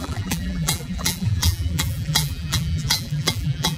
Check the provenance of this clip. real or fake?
fake